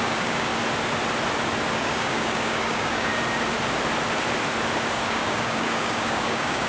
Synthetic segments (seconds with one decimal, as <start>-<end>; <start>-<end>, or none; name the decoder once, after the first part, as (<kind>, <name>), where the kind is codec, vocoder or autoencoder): 0.0-0.5 (codec, DAC); 1.7-3.1; 4.9-6.7